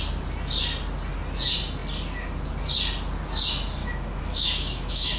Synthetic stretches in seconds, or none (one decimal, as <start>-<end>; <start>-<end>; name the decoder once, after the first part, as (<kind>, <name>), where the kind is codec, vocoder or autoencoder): 3.8-5.2 (autoencoder, DAC-VAE)